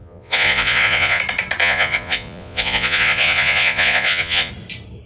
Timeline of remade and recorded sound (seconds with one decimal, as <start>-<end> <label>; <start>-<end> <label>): 0.0-1.2 remade; 1.2-1.6 recorded; 1.6-4.5 remade; 4.5-5.1 recorded